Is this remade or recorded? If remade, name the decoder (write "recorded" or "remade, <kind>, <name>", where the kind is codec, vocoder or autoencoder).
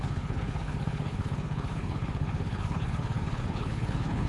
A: remade, codec, HILCodec